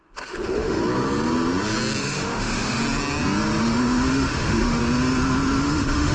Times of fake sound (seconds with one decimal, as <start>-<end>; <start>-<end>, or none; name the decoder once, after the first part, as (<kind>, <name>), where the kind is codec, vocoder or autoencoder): 0.0-0.8 (autoencoder, DAC-VAE); 2.0-2.8; 3.6-4.8; 5.6-6.1